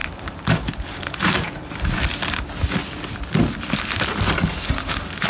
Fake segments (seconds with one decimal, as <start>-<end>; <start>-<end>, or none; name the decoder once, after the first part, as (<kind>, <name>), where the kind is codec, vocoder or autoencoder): 1.2-2.1 (vocoder, BigVGAN v2)